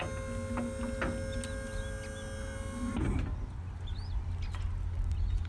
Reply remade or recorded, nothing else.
recorded